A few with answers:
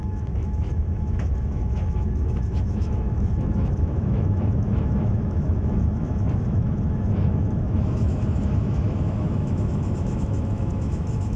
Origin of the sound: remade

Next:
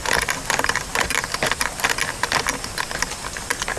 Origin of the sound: recorded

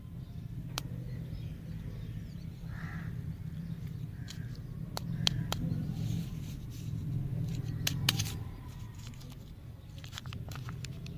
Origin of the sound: recorded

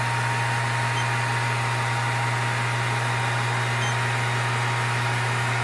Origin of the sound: recorded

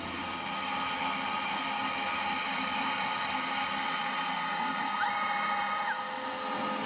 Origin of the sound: recorded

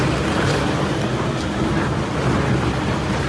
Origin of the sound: recorded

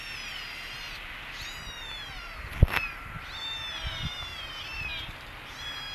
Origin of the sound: recorded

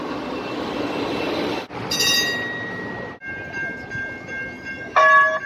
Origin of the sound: recorded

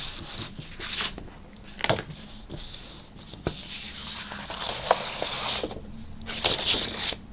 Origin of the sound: recorded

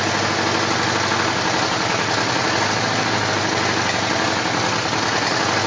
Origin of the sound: recorded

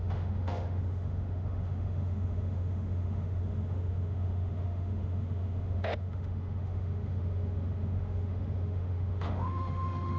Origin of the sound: remade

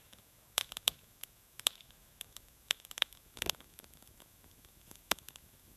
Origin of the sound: remade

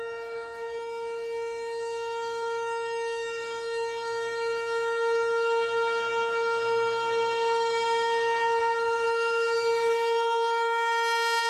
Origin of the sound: remade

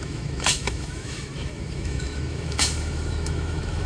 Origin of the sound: remade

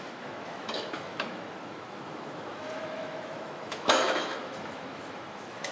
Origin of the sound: remade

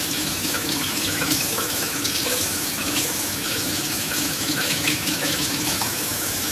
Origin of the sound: remade